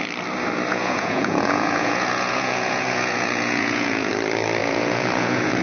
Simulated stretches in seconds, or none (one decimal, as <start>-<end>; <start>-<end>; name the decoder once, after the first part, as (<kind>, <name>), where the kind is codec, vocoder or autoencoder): 0.7-4.1 (vocoder, Vocos); 4.6-5.6